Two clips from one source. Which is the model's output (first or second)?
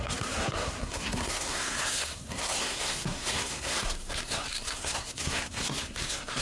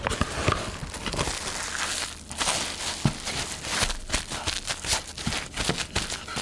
first